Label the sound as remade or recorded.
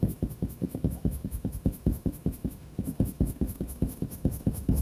remade